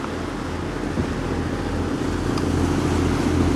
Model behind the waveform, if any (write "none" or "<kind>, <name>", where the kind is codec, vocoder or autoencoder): none